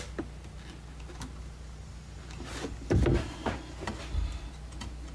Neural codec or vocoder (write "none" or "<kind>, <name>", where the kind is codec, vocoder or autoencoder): none